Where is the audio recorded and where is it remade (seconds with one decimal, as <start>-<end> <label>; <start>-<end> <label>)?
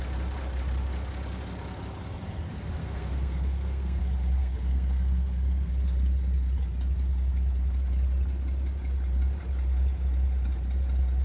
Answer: 0.0-2.8 recorded; 2.8-4.0 remade; 4.0-4.4 recorded; 4.4-5.7 remade; 5.7-11.2 recorded